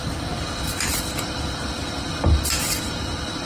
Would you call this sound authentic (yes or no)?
yes